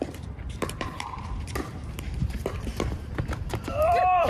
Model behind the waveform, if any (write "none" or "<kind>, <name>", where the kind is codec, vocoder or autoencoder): vocoder, BigVGAN v2